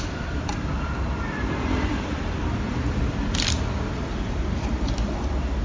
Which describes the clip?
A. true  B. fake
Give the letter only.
B